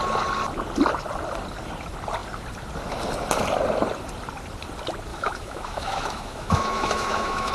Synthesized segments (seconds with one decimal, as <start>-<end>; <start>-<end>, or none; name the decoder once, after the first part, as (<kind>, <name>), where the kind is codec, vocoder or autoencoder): 5.1-7.5 (autoencoder, DAC-VAE)